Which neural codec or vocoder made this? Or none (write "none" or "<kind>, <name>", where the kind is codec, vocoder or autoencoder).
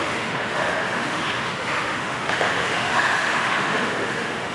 autoencoder, DAC-VAE